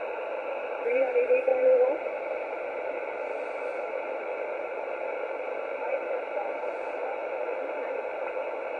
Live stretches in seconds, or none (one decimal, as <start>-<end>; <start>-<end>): 0.0-8.8